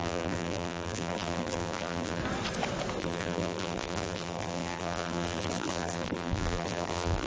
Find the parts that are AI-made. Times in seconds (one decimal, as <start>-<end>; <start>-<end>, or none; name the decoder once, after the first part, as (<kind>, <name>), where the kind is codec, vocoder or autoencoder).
0.0-2.2 (vocoder, BigVGAN v2); 3.0-7.3